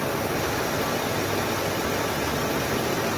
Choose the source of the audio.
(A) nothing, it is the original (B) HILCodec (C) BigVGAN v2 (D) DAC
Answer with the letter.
A